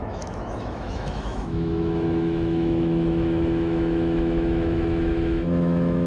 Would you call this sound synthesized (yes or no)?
yes